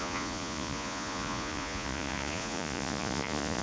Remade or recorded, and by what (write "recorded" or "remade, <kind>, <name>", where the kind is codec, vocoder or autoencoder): remade, vocoder, Vocos